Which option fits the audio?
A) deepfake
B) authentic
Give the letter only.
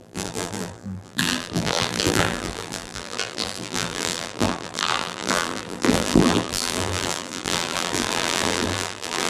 A